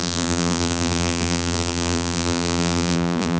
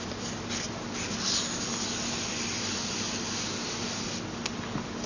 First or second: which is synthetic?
first